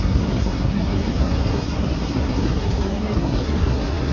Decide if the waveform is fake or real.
fake